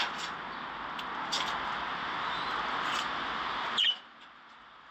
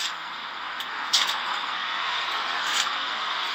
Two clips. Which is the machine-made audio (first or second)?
second